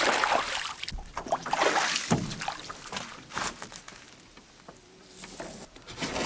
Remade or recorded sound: recorded